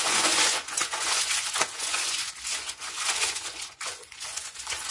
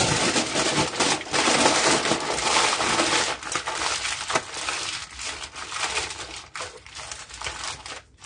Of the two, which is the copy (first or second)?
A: first